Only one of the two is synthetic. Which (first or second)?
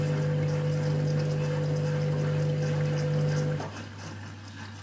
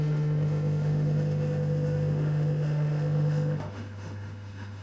second